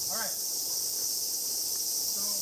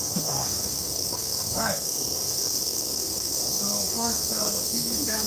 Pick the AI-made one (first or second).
second